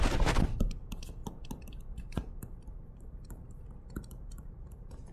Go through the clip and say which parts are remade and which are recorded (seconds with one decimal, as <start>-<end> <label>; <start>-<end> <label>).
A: 0.0-1.2 remade; 1.2-1.8 recorded; 1.8-5.1 remade